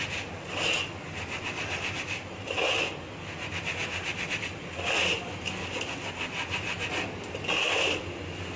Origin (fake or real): real